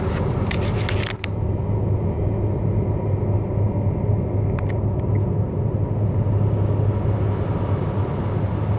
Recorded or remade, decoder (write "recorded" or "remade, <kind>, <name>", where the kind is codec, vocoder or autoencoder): recorded